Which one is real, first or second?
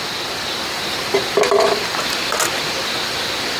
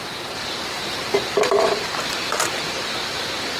first